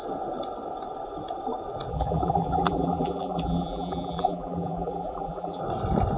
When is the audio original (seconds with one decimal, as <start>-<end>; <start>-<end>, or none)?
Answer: 0.0-1.9; 5.6-6.2